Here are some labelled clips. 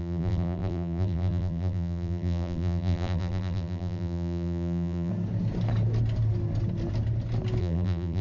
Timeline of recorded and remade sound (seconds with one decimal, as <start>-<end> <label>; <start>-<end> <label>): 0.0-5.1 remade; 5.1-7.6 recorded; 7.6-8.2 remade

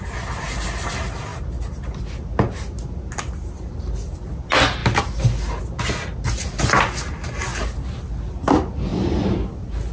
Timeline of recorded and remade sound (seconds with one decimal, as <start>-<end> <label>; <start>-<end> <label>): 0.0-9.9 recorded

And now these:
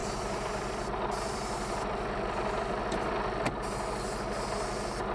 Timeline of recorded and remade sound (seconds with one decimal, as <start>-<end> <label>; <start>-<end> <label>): 0.0-3.1 remade; 3.1-5.1 recorded

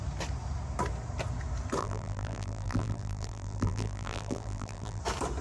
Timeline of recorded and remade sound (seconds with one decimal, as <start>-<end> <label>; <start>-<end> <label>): 0.0-1.8 recorded; 1.8-5.0 remade; 5.0-5.4 recorded

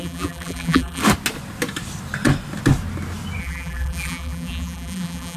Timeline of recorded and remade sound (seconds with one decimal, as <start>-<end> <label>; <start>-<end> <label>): 0.0-1.0 remade; 1.0-3.4 recorded; 3.4-5.4 remade

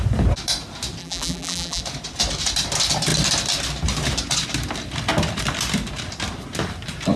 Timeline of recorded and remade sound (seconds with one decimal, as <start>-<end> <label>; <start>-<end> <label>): 0.0-1.0 recorded; 1.0-1.8 remade; 1.8-7.2 recorded